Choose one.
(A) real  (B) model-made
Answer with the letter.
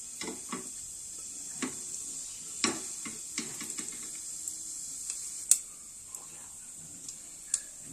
A